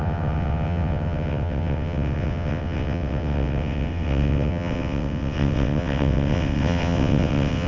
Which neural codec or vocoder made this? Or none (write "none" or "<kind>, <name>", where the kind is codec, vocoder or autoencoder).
vocoder, WaveNeXt